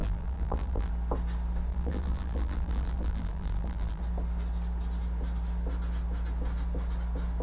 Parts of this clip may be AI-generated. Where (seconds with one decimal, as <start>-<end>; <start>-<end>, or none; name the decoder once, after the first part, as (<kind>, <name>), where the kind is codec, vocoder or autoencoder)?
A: 0.0-0.9 (vocoder, BigVGAN v2); 1.7-4.0